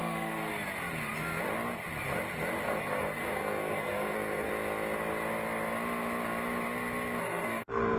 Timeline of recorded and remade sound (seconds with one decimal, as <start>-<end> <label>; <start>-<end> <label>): 0.0-0.5 remade; 0.5-2.6 recorded; 2.6-4.5 remade; 4.5-7.2 recorded; 7.2-8.0 remade